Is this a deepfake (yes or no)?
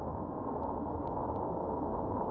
no